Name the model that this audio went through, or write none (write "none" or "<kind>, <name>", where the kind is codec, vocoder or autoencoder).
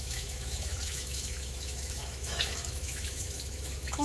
autoencoder, DAC-VAE